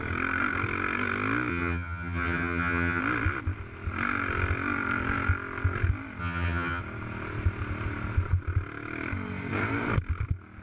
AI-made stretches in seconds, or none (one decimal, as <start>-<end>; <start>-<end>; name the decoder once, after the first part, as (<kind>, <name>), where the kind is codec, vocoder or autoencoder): 1.5-3.0 (vocoder, HiFi-GAN); 6.2-6.8